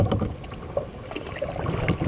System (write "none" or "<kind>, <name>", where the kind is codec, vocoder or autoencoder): none